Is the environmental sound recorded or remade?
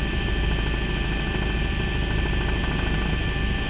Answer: recorded